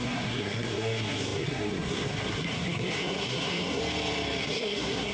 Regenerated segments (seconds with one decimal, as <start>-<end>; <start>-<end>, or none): 0.0-3.8; 4.4-5.1